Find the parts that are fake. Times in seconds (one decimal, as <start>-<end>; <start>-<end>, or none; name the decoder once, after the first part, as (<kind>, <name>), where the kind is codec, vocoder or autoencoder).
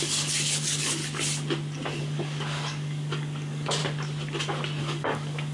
0.0-1.0 (codec, DAC); 2.0-3.8; 4.8-5.5